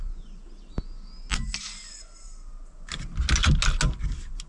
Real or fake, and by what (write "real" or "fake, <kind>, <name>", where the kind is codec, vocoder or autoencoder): real